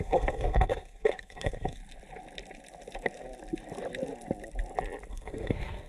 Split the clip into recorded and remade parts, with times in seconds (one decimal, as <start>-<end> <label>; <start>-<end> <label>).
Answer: 0.0-1.8 remade; 1.8-5.1 recorded; 5.1-5.9 remade